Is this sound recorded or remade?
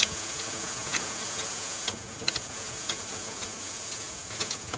remade